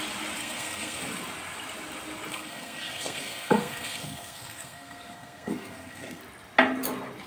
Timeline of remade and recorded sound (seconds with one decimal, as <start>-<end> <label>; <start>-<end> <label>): 0.0-0.4 recorded; 0.4-1.0 remade; 1.0-2.3 recorded; 2.3-6.2 remade; 6.2-7.3 recorded